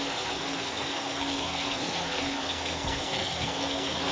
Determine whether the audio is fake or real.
fake